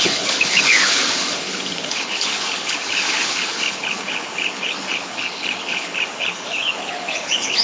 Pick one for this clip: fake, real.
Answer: fake